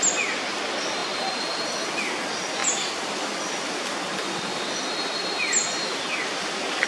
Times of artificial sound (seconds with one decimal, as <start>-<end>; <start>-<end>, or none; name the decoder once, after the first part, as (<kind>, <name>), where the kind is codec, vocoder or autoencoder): 2.6-4.6 (vocoder, BigVGAN v2)